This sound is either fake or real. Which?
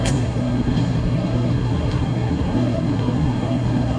fake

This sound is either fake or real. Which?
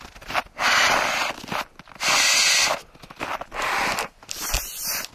real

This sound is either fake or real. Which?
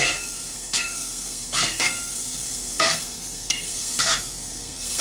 fake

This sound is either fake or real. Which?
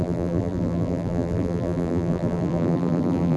fake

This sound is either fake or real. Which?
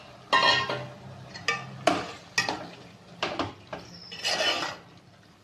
real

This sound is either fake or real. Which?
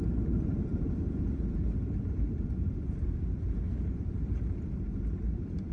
fake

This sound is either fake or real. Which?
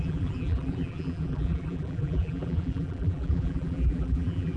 fake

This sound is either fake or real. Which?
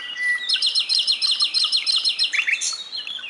real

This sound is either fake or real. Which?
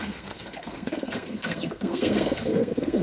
fake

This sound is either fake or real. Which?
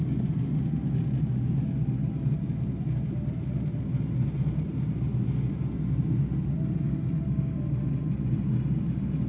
real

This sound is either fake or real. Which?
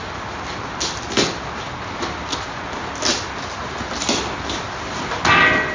real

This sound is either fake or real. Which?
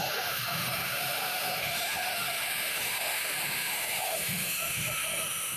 fake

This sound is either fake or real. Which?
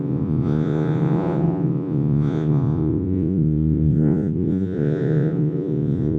fake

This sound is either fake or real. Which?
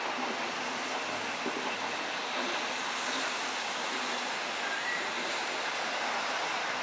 real